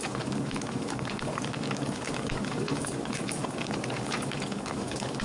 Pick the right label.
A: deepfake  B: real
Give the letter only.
A